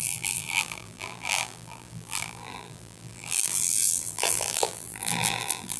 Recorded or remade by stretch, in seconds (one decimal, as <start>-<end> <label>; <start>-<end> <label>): 0.0-5.8 remade